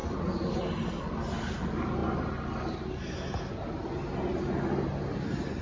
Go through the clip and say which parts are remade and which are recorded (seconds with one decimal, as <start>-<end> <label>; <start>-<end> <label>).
0.0-2.0 remade; 2.0-5.6 recorded